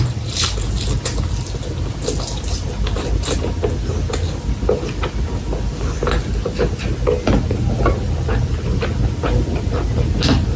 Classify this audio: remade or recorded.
recorded